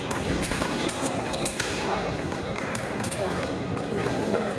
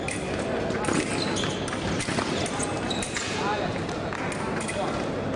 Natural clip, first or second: second